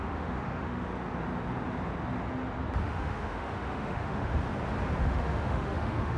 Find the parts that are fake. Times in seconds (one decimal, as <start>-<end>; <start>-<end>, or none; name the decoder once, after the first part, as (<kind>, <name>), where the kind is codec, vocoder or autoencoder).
0.0-0.9 (autoencoder, DAC-VAE); 2.8-4.3; 5.0-6.2